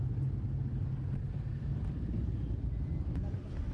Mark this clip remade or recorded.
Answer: recorded